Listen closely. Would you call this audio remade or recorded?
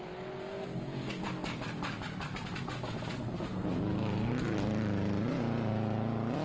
recorded